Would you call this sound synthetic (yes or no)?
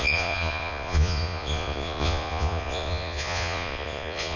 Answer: yes